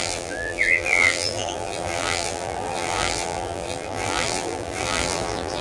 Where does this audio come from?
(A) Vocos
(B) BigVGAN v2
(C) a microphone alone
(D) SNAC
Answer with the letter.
B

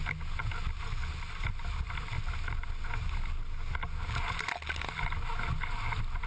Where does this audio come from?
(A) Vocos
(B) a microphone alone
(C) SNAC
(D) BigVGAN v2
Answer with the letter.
B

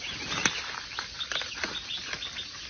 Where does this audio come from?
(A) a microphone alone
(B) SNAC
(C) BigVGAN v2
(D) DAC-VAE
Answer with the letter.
A